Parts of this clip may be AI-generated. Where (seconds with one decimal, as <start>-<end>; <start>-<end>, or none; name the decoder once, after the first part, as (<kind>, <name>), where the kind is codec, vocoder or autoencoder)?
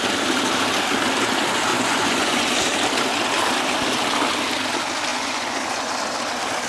1.7-2.5 (vocoder, Vocos); 5.1-5.9